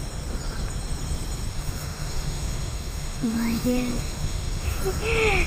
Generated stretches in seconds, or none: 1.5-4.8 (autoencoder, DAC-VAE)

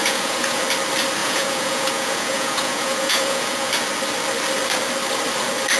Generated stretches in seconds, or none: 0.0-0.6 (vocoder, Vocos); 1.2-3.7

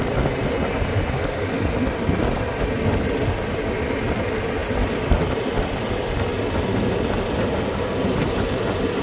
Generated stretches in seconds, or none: none

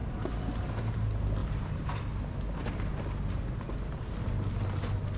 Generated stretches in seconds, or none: 0.0-0.9 (vocoder, BigVGAN v2); 1.4-2.0